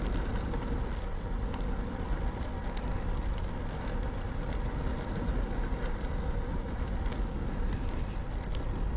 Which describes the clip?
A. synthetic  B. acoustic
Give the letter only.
B